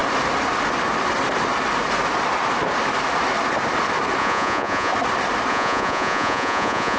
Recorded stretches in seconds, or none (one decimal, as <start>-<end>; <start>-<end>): 0.0-4.2; 4.9-5.5